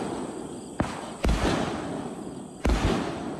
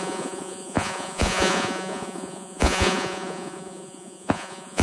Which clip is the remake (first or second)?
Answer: second